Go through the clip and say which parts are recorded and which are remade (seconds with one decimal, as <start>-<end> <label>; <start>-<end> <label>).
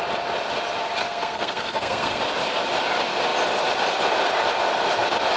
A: 0.0-1.0 recorded; 1.0-2.2 remade; 2.2-5.4 recorded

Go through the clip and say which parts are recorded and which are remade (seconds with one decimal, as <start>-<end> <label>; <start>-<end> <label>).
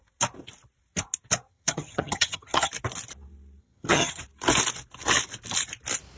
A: 0.0-1.5 recorded; 1.5-2.7 remade; 2.7-3.6 recorded; 3.6-4.2 remade; 4.2-6.2 recorded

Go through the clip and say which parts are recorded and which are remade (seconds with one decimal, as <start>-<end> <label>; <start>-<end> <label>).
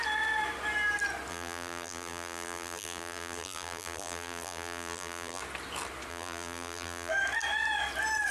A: 0.0-1.3 recorded; 1.3-5.4 remade; 5.4-6.1 recorded; 6.1-7.1 remade; 7.1-8.3 recorded